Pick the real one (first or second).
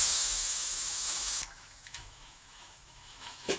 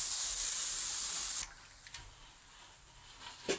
second